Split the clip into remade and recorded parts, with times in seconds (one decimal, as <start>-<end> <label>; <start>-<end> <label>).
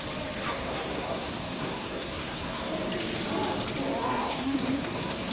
0.0-0.5 recorded; 0.5-2.7 remade; 2.7-4.1 recorded; 4.1-5.3 remade